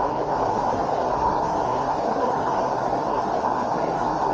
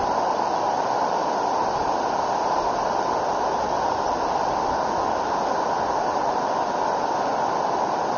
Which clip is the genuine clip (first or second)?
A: second